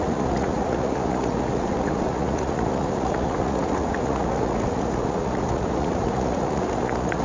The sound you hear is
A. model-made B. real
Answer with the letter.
A